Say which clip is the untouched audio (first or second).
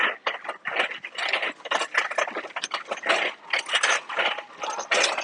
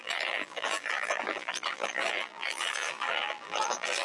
first